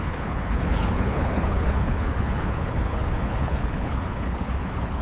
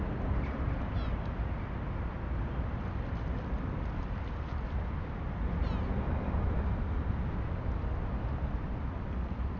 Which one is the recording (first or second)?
second